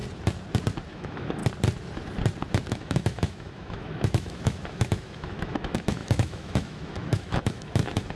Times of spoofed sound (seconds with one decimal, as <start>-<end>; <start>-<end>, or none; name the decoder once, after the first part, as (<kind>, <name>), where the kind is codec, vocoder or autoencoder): 0.9-1.4 (autoencoder, DAC-VAE); 2.7-8.2